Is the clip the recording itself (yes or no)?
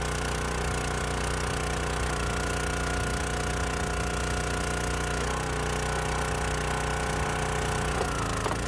yes